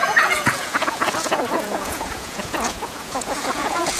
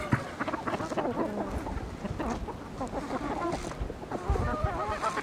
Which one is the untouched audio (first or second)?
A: second